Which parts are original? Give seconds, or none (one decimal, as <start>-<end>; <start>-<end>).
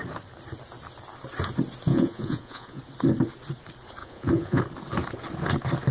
0.0-1.9; 2.8-4.0; 4.6-5.9